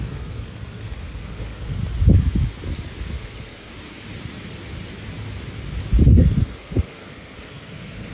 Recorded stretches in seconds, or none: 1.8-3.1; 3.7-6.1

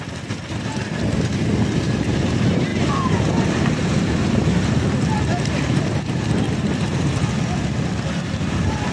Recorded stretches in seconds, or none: 0.0-2.7; 5.8-8.9

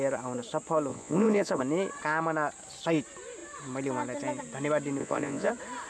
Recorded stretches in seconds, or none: 0.0-0.9; 1.6-5.0; 5.5-5.9

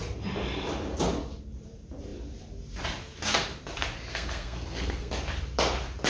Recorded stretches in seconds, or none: 0.0-4.1; 5.1-6.1

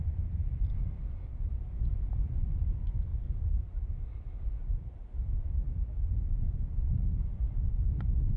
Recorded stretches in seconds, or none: 0.4-2.1; 3.1-7.7

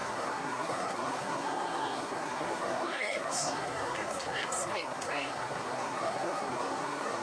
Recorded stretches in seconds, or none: none

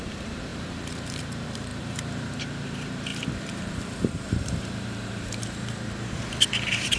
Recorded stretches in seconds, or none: none